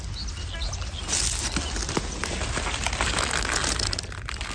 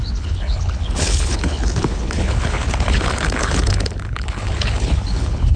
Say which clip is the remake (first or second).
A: second